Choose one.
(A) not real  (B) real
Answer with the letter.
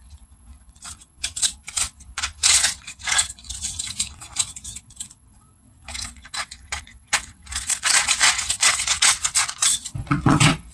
A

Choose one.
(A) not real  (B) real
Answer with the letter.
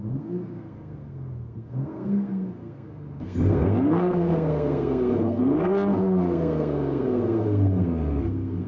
A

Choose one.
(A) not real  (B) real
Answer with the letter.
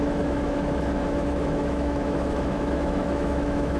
A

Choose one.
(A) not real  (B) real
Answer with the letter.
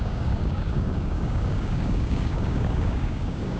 A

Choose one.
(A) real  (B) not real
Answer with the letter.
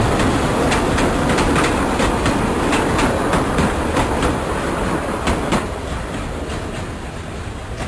A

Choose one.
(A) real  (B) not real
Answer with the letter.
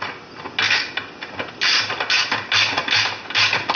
A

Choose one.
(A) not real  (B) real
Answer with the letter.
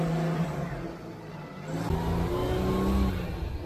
B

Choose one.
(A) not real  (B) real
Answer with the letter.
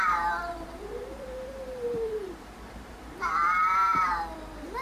A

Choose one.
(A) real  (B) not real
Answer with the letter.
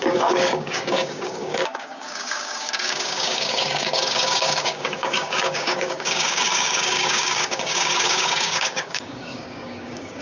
B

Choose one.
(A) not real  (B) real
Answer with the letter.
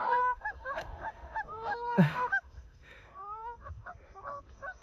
A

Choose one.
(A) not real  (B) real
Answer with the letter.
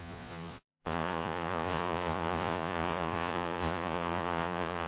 A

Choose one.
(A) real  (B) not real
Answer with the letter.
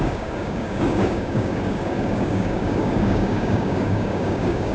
B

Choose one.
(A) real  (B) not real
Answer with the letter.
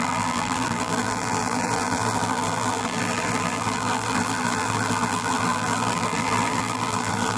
B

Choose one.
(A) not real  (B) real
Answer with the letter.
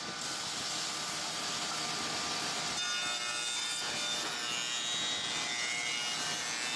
B